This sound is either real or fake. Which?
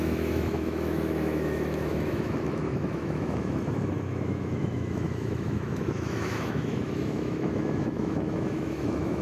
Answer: fake